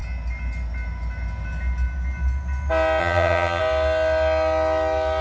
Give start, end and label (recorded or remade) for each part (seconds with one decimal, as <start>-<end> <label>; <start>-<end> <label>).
0.0-3.0 recorded; 3.0-3.6 remade; 3.6-5.2 recorded